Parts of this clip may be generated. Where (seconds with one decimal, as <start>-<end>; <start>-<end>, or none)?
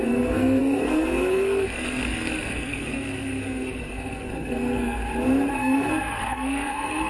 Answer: 0.0-5.0; 5.5-7.1